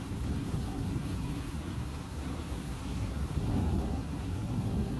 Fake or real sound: fake